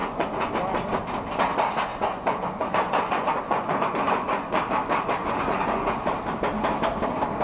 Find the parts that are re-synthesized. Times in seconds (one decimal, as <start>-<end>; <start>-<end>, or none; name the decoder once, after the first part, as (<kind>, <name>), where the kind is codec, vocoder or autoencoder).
0.0-0.5 (vocoder, Vocos); 1.9-4.6; 5.2-6.1